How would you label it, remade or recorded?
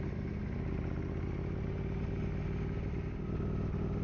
recorded